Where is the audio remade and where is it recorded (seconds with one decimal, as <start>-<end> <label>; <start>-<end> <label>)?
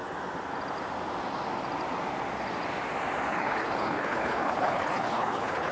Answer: 0.0-3.3 recorded; 3.3-5.7 remade